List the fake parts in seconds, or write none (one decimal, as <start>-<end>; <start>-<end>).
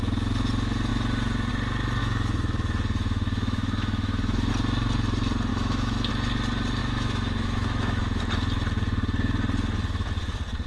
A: 2.0-4.5; 5.5-6.1; 6.8-8.2